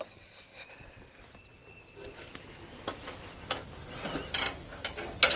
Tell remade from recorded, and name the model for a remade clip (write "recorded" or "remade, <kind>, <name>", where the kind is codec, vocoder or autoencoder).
recorded